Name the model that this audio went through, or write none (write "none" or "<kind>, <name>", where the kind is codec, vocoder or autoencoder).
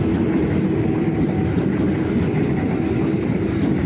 none